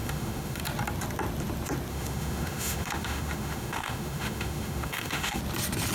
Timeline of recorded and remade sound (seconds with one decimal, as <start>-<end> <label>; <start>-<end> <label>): 0.0-0.6 remade; 0.6-1.9 recorded; 1.9-5.4 remade; 5.4-5.9 recorded

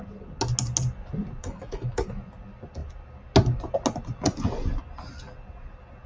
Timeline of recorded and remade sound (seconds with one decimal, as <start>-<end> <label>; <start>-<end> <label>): 0.0-1.4 recorded; 1.4-2.2 remade; 2.2-6.1 recorded